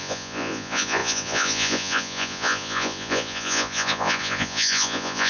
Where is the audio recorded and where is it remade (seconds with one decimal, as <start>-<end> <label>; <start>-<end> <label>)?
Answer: 0.0-5.3 remade